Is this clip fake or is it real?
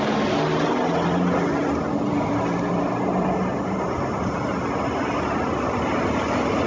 real